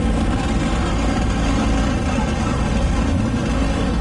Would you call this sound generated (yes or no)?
no